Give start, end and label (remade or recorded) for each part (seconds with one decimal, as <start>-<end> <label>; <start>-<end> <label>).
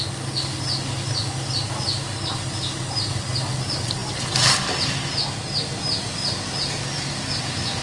0.0-7.8 recorded